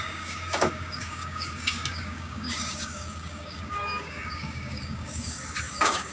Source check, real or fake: fake